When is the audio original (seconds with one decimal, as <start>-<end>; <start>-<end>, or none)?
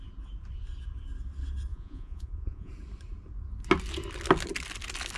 0.0-1.7; 2.7-5.2